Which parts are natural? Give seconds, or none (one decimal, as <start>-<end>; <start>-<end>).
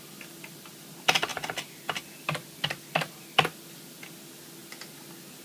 0.0-1.3; 2.0-5.4